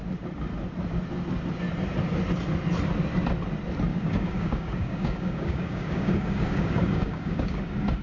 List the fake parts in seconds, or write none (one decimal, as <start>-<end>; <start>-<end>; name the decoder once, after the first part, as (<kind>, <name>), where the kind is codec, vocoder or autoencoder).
3.9-7.6 (codec, DAC)